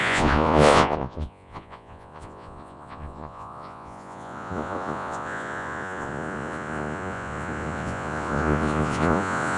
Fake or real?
fake